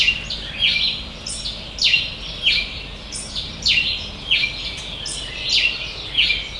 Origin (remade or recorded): recorded